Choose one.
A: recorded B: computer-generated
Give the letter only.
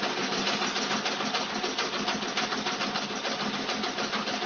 A